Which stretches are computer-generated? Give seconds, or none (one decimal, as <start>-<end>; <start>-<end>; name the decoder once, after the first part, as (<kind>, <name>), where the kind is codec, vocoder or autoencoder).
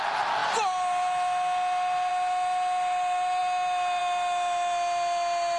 none